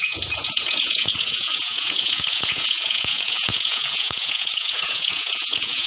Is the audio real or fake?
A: fake